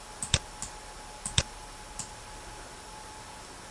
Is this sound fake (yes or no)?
no